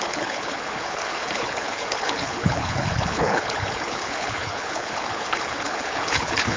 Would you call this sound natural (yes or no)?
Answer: no